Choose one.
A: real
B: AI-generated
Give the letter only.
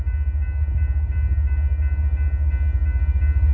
A